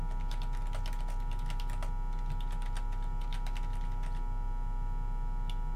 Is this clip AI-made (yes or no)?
no